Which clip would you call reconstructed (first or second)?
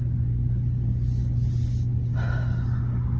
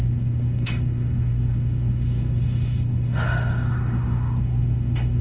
second